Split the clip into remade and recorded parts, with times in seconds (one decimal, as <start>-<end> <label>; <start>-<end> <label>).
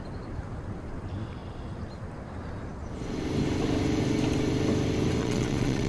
0.0-5.2 recorded; 5.2-5.9 remade